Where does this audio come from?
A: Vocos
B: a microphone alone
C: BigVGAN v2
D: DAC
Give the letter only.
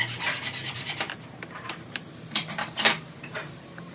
C